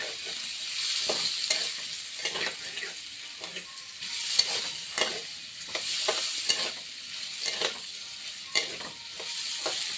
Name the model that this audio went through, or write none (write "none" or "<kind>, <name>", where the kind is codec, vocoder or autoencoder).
none